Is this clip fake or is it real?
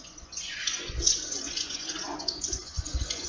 fake